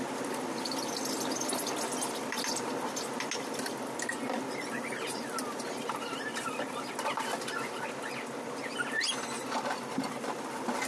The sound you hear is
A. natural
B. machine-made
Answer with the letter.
A